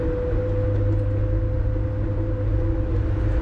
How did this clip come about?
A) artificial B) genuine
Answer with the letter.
B